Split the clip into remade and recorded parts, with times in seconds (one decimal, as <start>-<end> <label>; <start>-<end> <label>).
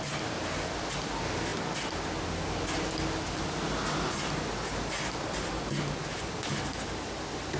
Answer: 0.0-7.6 recorded